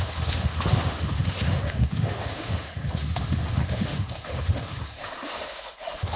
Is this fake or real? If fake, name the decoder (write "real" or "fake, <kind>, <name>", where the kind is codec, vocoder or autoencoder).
fake, autoencoder, DAC-VAE